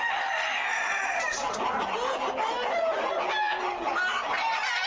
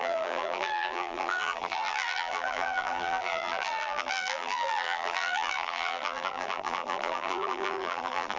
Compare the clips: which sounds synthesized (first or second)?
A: second